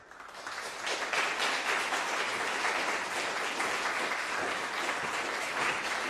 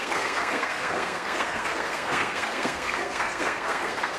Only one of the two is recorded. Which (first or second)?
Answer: first